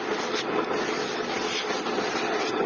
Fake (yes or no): no